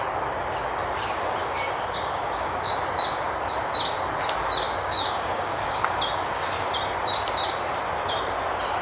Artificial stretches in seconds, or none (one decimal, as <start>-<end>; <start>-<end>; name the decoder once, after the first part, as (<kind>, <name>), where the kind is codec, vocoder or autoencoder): 1.4-2.7 (codec, DAC); 4.8-5.8